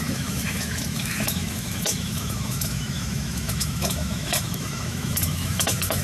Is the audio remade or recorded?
remade